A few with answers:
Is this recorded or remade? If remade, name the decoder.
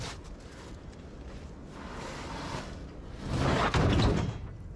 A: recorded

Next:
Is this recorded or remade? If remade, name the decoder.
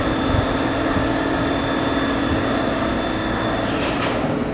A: recorded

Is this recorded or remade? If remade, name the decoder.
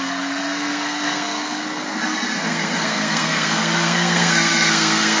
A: remade, codec, SNAC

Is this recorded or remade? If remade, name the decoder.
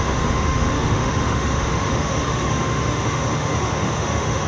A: remade, autoencoder, DAC-VAE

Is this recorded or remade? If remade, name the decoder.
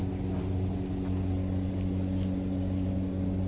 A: recorded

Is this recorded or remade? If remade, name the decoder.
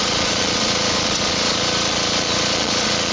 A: remade, vocoder, Vocos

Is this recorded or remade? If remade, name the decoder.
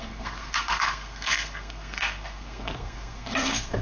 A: remade, codec, SNAC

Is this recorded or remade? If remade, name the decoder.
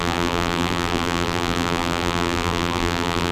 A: remade, vocoder, BigVGAN v2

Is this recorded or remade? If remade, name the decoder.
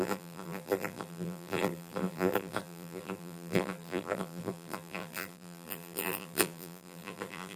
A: remade, vocoder, BigVGAN v2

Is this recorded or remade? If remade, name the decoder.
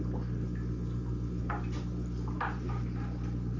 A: recorded